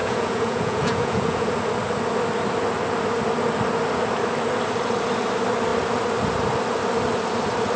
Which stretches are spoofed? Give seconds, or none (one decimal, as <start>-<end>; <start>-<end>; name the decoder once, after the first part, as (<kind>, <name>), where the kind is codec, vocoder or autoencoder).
0.0-1.5 (vocoder, Vocos)

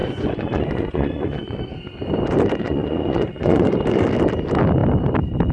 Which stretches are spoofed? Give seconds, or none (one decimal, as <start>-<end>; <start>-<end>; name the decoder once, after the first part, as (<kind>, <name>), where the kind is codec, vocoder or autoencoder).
0.0-1.6 (vocoder, Vocos); 2.6-3.7